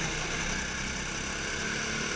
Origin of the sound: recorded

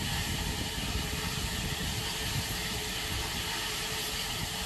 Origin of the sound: recorded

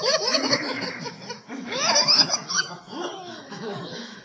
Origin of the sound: remade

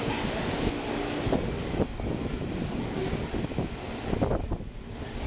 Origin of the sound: recorded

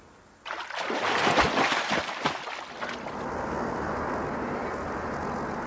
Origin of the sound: recorded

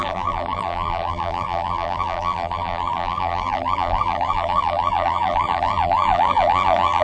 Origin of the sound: remade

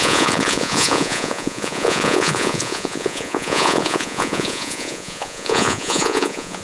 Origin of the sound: remade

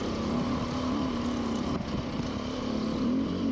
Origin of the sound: recorded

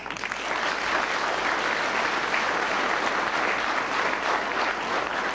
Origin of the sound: recorded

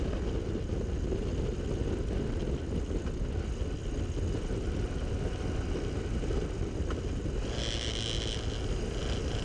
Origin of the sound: recorded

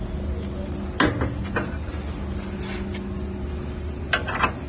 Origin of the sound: recorded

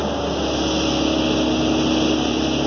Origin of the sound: recorded